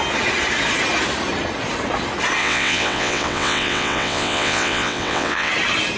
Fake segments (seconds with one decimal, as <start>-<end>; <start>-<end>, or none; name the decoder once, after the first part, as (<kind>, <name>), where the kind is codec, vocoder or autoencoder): 2.4-5.5 (vocoder, WaveNeXt)